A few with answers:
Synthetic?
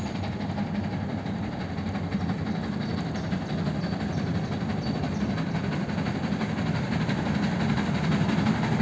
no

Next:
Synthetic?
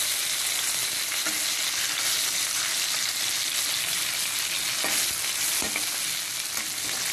no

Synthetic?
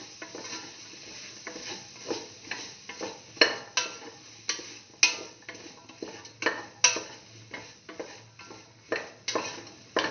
no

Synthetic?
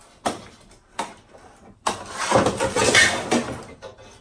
no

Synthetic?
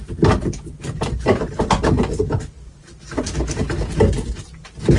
no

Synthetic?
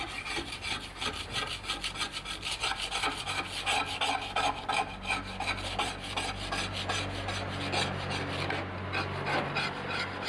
no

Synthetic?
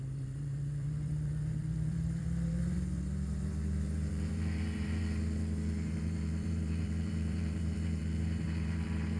yes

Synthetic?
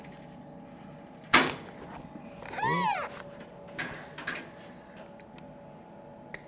no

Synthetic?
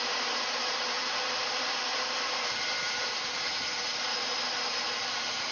yes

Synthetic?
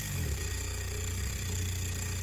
no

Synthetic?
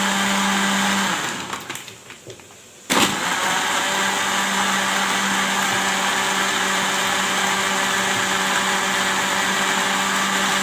no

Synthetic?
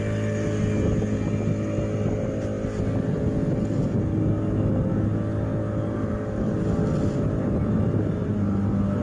no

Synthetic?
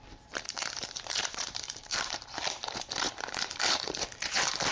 yes